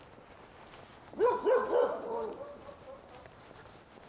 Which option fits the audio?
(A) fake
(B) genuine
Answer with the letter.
B